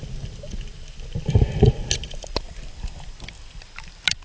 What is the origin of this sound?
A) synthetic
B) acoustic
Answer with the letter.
B